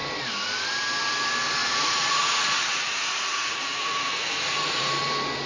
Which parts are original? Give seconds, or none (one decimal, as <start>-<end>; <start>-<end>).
0.0-1.6; 4.9-5.5